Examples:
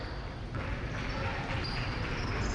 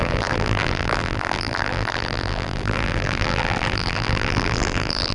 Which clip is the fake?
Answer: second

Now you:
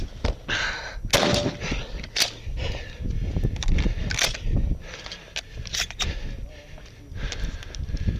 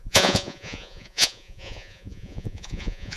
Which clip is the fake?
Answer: second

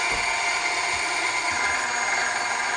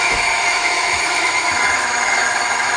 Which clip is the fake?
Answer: second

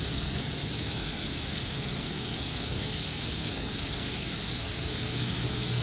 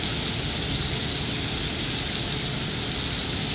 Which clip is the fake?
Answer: first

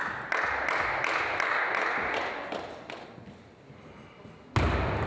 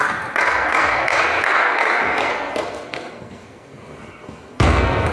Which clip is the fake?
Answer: second